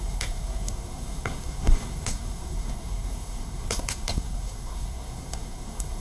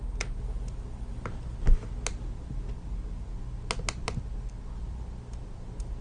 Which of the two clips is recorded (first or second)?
second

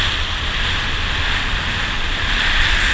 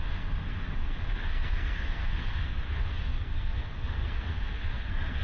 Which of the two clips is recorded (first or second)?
first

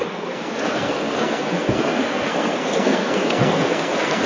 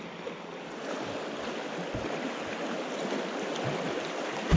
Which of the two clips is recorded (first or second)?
second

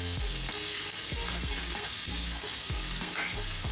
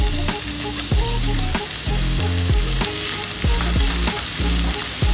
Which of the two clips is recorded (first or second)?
second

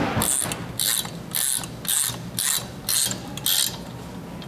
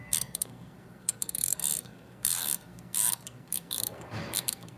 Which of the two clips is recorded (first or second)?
first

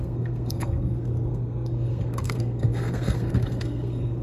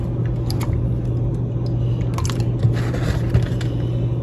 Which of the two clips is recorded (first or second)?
second